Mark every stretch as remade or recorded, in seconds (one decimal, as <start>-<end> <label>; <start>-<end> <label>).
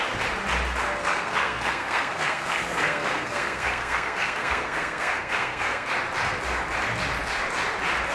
0.0-1.0 recorded; 1.0-5.9 remade; 5.9-8.1 recorded